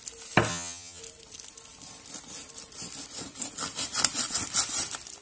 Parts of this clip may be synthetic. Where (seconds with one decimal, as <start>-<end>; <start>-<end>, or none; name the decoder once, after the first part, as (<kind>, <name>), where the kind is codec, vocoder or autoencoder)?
0.5-1.0 (vocoder, HiFi-GAN)